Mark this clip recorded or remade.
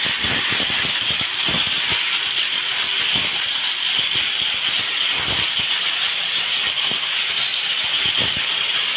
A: recorded